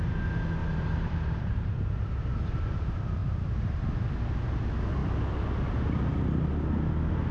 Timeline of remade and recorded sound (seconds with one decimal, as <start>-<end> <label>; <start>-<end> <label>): 0.0-0.6 recorded; 0.6-1.9 remade; 1.9-3.2 recorded; 3.2-3.8 remade; 3.8-7.3 recorded